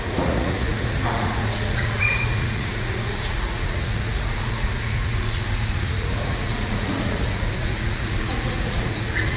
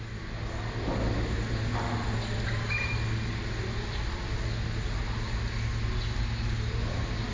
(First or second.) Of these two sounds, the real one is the second